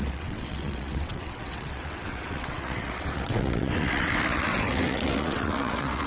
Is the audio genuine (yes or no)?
no